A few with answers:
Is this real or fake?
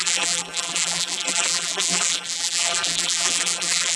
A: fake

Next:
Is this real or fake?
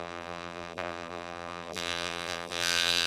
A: fake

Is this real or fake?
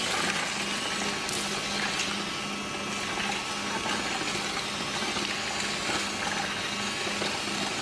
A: real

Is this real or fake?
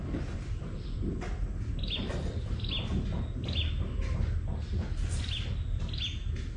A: real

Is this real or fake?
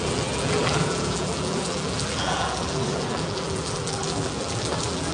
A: fake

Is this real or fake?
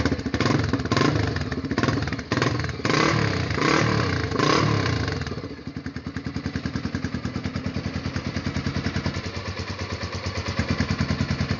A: real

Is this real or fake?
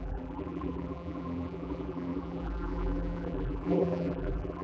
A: fake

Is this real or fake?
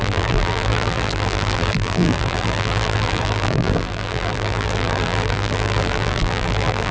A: fake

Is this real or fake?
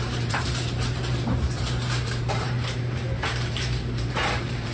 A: fake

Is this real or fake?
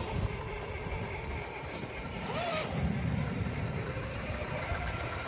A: fake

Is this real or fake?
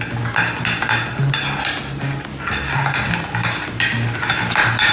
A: real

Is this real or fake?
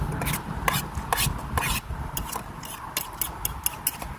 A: real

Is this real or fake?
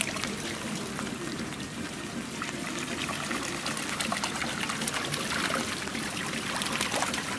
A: fake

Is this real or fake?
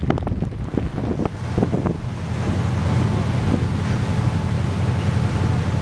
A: real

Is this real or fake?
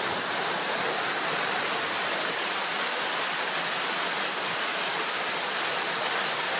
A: real